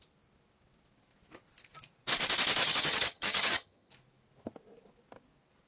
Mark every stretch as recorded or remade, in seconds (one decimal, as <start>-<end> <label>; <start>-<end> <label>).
0.0-2.6 recorded; 2.6-3.9 remade; 3.9-5.7 recorded